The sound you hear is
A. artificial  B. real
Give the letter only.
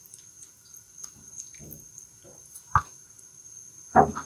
B